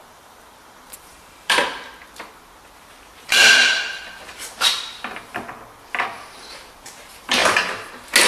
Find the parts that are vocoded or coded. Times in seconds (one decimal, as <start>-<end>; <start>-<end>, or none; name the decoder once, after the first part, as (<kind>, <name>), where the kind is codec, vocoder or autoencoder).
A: 0.0-1.6 (vocoder, BigVGAN v2); 2.9-3.4; 6.6-7.4